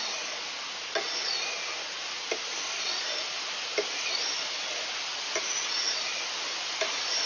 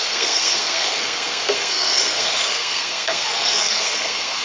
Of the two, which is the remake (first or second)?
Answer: second